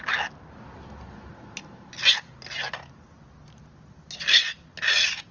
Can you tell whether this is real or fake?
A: real